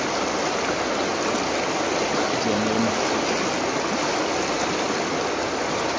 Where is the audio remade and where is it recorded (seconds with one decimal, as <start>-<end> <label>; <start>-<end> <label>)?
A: 0.0-6.0 recorded